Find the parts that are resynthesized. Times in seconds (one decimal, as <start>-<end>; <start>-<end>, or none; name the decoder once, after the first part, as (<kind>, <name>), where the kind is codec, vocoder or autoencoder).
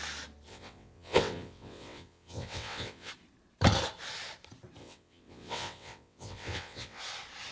0.5-3.1 (vocoder, WaveNeXt); 4.8-7.0